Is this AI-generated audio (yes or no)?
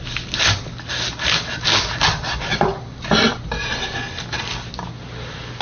no